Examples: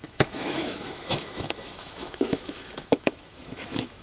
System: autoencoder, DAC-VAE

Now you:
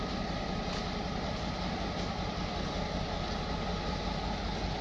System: none